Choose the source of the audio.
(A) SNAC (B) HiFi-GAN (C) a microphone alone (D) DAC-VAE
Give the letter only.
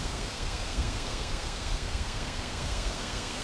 A